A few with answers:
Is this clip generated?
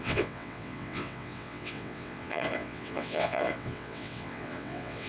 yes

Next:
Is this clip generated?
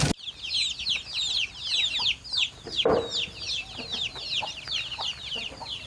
no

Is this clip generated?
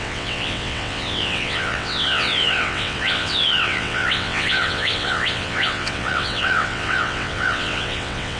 yes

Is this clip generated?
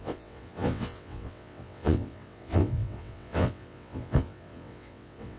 yes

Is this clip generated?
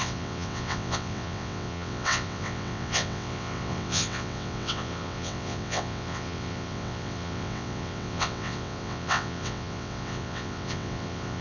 yes